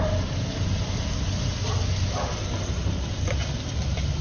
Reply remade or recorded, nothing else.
recorded